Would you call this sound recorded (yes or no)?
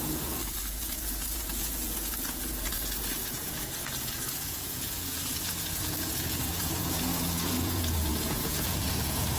no